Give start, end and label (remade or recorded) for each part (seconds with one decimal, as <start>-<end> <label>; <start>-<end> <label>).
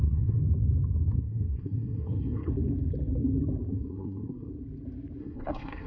0.0-0.4 remade; 0.4-1.1 recorded; 1.1-2.5 remade; 2.5-3.7 recorded; 3.7-4.5 remade; 4.5-5.2 recorded; 5.2-5.9 remade